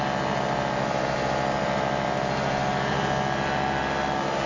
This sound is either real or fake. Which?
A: real